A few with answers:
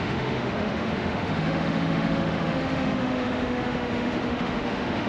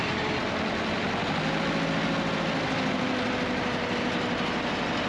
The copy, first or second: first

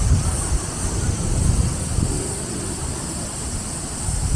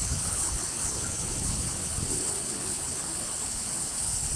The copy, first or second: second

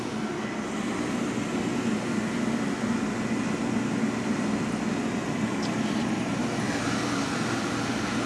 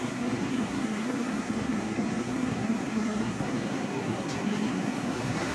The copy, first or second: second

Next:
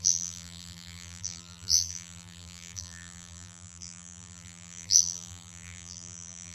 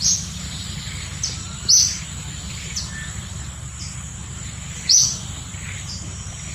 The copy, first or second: first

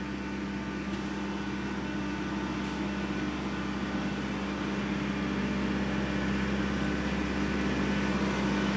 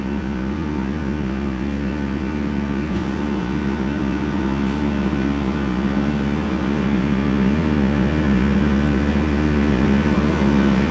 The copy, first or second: second